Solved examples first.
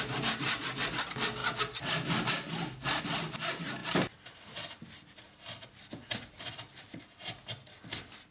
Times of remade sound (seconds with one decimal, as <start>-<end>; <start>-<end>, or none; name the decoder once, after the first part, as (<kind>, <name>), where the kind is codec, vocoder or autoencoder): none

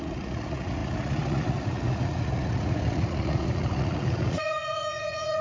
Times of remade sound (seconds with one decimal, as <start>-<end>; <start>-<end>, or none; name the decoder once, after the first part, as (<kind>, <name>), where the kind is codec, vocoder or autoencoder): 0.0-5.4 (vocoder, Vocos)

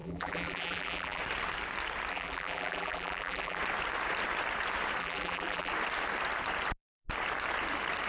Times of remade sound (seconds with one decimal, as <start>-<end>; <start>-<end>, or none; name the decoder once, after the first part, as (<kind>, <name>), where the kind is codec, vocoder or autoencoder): 0.0-1.2 (vocoder, BigVGAN v2); 2.1-3.6; 5.0-5.7